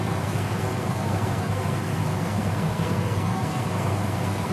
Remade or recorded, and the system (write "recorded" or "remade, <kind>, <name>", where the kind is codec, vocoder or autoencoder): remade, codec, SNAC